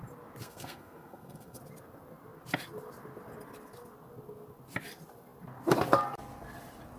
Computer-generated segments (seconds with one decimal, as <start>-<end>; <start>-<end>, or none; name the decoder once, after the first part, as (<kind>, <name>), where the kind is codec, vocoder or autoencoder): 0.4-1.6 (codec, SNAC)